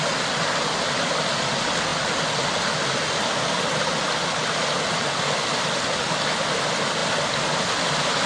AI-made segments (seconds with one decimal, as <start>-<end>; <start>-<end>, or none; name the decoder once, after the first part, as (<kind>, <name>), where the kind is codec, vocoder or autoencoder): none